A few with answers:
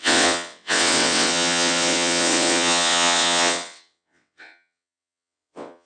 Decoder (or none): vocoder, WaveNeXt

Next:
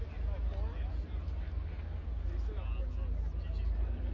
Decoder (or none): none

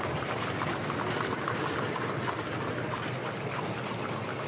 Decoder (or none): none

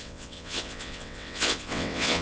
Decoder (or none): vocoder, WaveNeXt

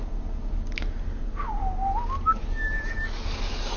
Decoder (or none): none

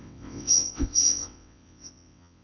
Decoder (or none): vocoder, WaveNeXt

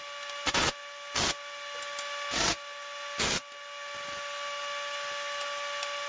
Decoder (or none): none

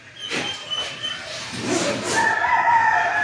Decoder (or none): none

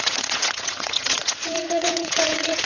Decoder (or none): vocoder, WaveNeXt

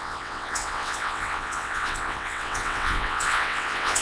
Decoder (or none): vocoder, WaveNeXt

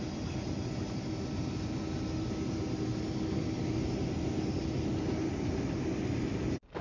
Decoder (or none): none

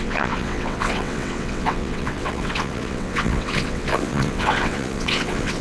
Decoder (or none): vocoder, WaveNeXt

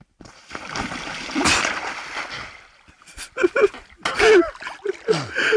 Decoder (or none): none